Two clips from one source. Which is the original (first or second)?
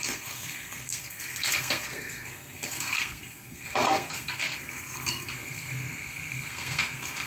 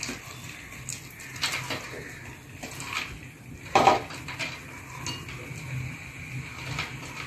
second